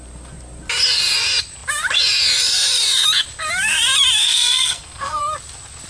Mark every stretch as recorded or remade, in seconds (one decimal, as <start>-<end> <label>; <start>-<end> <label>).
0.0-4.2 recorded; 4.2-5.2 remade; 5.2-5.9 recorded